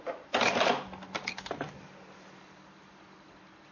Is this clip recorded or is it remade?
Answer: recorded